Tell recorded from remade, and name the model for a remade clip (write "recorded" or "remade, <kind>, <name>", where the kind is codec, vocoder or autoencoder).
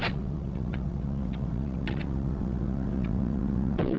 remade, vocoder, WaveNeXt